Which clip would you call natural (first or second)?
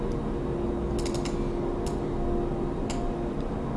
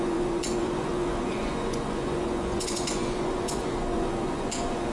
first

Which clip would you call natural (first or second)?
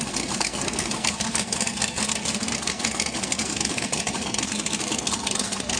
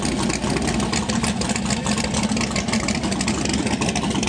second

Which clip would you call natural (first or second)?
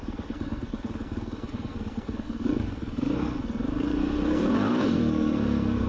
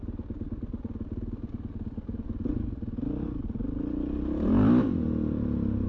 second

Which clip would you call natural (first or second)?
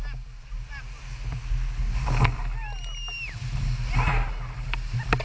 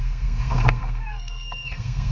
first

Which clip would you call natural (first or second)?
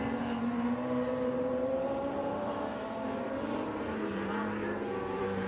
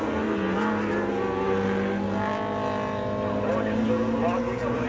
second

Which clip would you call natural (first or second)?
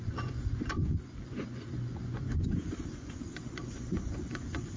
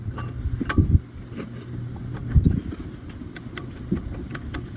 second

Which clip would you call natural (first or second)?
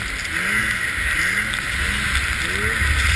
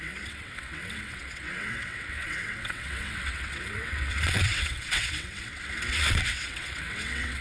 first